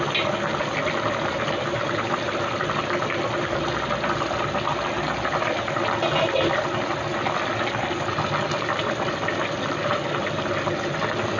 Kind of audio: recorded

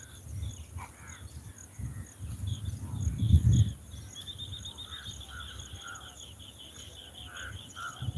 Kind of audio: recorded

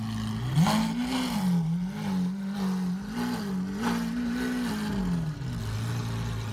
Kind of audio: recorded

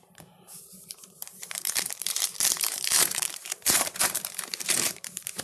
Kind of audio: remade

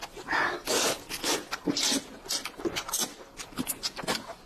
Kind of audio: recorded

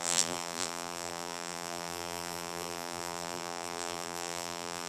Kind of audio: remade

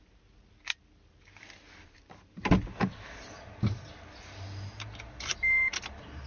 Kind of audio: recorded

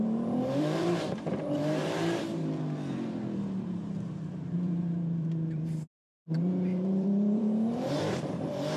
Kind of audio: remade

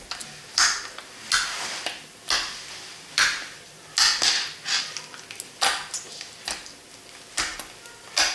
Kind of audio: recorded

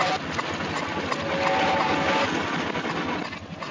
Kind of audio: recorded